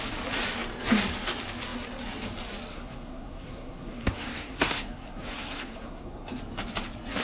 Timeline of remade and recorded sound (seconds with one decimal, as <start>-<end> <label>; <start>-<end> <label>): 0.0-2.7 recorded; 2.7-6.4 remade; 6.4-7.2 recorded